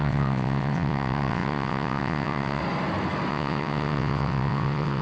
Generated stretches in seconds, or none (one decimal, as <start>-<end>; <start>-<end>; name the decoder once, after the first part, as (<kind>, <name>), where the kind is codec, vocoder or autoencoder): 0.0-2.6 (vocoder, WaveNeXt); 3.3-5.0